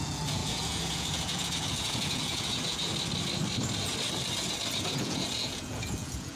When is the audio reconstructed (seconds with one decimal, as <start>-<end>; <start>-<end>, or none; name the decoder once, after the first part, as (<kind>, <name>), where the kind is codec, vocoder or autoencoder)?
0.0-2.9 (vocoder, Vocos); 4.8-6.4